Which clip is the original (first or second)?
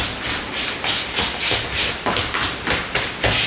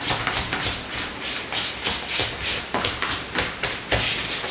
second